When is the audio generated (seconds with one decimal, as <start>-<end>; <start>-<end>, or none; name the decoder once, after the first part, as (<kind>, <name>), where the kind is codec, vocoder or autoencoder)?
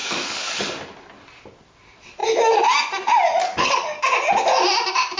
0.0-0.6 (codec, DAC); 3.4-4.0